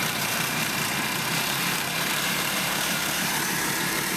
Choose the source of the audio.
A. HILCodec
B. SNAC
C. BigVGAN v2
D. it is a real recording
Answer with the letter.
C